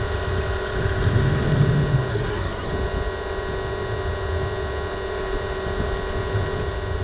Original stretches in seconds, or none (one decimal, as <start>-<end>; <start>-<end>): 0.0-2.1; 2.7-7.0